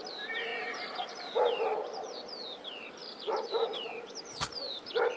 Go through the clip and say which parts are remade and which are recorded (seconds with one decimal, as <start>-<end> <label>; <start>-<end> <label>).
0.0-1.7 remade; 1.7-2.3 recorded; 2.3-5.2 remade